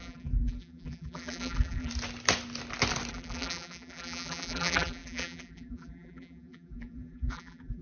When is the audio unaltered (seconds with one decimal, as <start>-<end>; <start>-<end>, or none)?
1.9-3.1